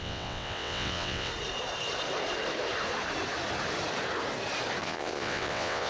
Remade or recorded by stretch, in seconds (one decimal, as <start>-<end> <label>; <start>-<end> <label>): 0.0-1.3 remade; 1.3-4.8 recorded; 4.8-5.9 remade